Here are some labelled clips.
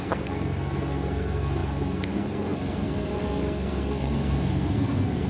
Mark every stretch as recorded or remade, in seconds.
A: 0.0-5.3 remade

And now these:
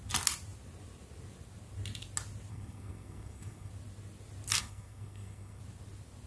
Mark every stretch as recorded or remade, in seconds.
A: 0.0-2.5 recorded; 2.5-3.7 remade; 3.7-4.6 recorded; 4.6-5.6 remade; 5.6-6.3 recorded

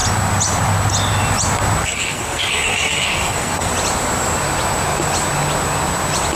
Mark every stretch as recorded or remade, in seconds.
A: 0.0-1.8 recorded; 1.8-3.7 remade; 3.7-6.4 recorded